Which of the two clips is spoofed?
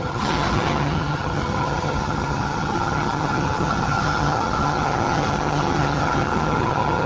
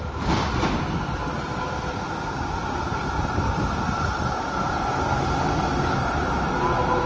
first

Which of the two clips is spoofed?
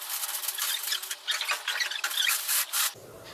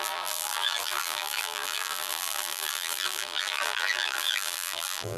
second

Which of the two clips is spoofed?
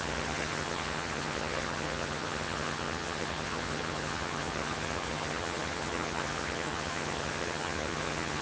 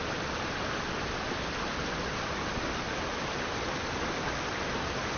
first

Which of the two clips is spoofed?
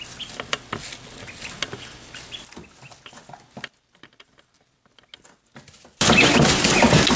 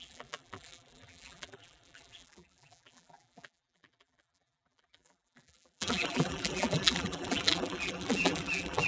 second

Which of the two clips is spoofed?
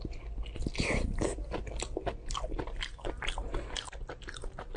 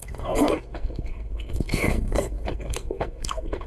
second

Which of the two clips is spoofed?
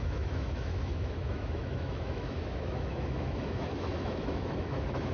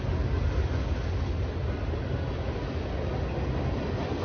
first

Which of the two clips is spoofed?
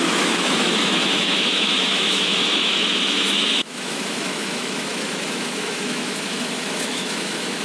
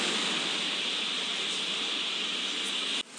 first